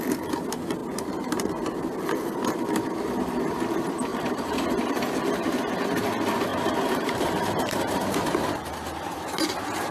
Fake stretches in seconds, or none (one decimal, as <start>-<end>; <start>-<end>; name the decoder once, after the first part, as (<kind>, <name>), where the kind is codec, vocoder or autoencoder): 4.1-4.7 (vocoder, BigVGAN v2); 6.5-8.0